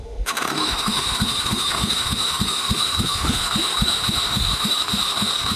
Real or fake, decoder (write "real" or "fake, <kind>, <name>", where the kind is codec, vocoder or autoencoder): fake, autoencoder, DAC-VAE